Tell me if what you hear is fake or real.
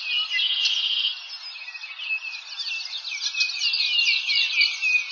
real